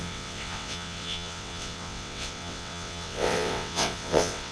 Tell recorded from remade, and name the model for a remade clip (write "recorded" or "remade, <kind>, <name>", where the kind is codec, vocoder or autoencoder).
remade, vocoder, WaveNeXt